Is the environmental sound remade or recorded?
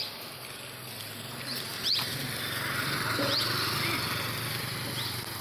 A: recorded